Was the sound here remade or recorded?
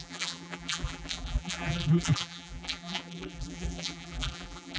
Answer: remade